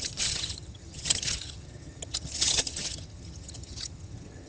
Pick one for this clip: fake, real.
fake